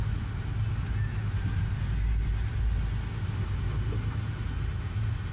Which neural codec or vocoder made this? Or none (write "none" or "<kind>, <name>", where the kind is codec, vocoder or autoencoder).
none